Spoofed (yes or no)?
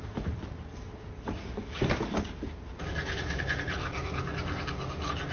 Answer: no